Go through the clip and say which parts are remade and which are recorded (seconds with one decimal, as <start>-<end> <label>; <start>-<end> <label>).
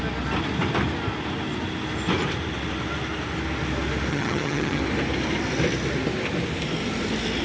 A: 0.0-4.1 recorded; 4.1-4.8 remade; 4.8-7.4 recorded